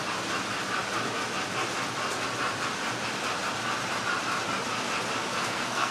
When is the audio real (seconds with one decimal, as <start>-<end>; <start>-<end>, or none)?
0.0-5.3